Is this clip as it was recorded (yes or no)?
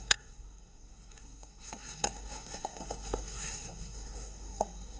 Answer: no